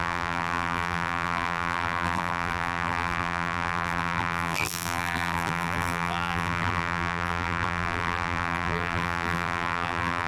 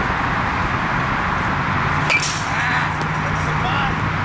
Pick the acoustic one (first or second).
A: second